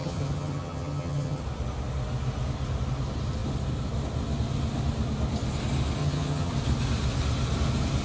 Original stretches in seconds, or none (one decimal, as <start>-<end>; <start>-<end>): 1.4-6.0; 6.5-8.0